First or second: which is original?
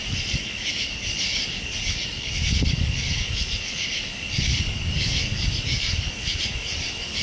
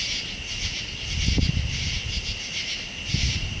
second